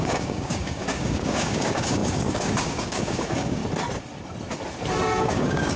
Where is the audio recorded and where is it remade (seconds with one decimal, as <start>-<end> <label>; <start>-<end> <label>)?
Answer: 0.0-3.6 remade; 3.6-5.2 recorded; 5.2-5.8 remade